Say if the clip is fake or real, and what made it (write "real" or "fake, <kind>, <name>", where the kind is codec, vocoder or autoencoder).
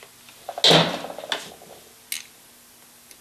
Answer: real